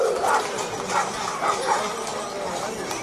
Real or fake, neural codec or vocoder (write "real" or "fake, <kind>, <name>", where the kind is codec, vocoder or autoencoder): real